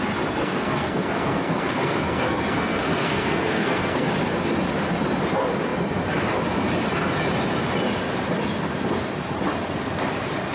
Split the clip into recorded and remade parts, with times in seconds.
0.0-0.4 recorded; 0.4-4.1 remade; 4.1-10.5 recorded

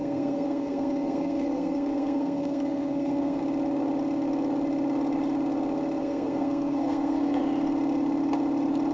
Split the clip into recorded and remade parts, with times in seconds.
0.0-3.4 remade; 3.4-6.0 recorded; 6.0-7.4 remade; 7.4-8.9 recorded

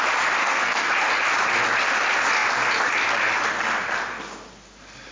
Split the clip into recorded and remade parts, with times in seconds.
0.0-0.4 recorded; 0.4-0.9 remade; 0.9-5.1 recorded

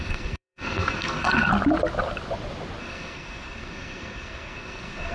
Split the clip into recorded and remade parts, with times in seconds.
0.0-1.5 remade; 1.5-2.8 recorded; 2.8-5.1 remade

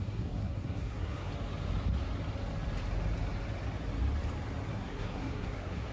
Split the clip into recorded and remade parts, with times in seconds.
0.0-1.3 remade; 1.3-4.7 recorded; 4.7-5.9 remade

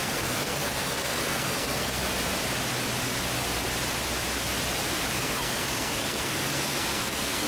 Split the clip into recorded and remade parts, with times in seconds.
0.0-2.0 remade; 2.0-5.1 recorded; 5.1-7.5 remade

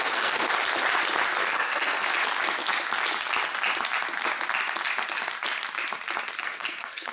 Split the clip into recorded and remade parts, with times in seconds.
0.0-0.5 remade; 0.5-1.3 recorded; 1.3-2.1 remade; 2.1-6.4 recorded; 6.4-7.1 remade